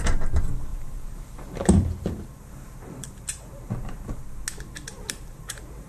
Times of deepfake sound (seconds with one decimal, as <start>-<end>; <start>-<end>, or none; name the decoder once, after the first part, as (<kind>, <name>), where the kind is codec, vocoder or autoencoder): 0.7-4.2 (vocoder, BigVGAN v2); 4.9-5.9